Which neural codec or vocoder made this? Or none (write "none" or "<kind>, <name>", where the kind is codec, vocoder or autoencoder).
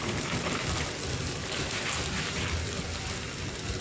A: none